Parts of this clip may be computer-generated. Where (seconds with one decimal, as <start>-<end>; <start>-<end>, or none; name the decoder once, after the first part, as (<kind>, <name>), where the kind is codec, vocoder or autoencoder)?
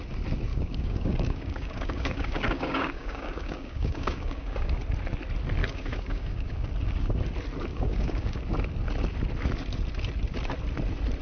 0.5-4.8 (codec, DAC); 5.6-6.7; 7.7-8.4